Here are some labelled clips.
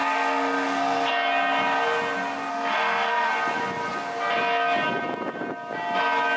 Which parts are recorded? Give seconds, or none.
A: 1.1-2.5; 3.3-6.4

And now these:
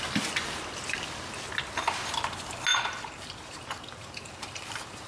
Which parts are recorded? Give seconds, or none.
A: 0.0-2.7

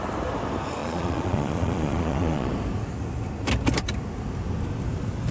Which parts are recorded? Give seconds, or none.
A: 0.0-0.8; 2.5-5.3

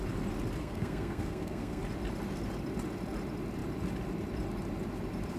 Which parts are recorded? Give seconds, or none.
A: 0.0-0.6; 1.8-5.4

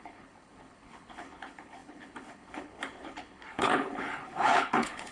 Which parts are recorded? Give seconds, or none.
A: none

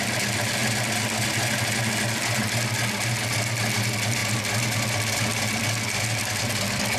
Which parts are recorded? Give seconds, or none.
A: 0.0-7.0

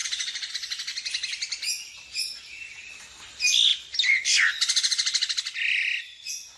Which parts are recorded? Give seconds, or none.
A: 0.5-6.6

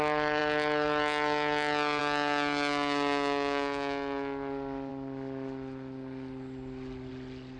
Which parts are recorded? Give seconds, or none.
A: 0.0-7.6